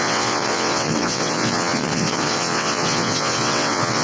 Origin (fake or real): fake